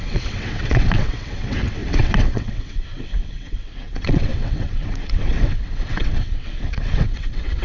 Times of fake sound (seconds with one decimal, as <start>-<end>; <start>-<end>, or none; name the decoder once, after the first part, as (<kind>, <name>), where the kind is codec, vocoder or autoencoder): 0.0-7.6 (vocoder, WaveNeXt)